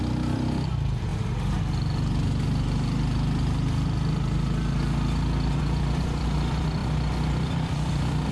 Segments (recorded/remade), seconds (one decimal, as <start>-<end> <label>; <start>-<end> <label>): 0.0-1.1 remade; 1.1-5.6 recorded; 5.6-8.3 remade